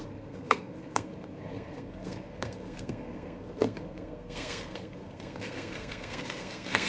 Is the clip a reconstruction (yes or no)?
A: yes